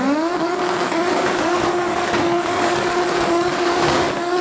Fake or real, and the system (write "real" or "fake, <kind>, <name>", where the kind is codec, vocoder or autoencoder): fake, codec, DAC